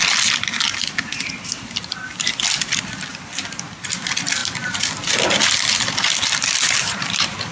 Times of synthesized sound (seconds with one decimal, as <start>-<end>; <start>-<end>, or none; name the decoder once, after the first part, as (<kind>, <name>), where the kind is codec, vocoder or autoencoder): 4.4-5.0 (vocoder, BigVGAN v2)